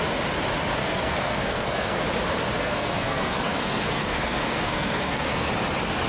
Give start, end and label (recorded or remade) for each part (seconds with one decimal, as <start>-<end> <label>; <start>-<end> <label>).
0.0-0.8 recorded; 0.8-2.0 remade; 2.0-2.6 recorded; 2.6-5.5 remade; 5.5-6.1 recorded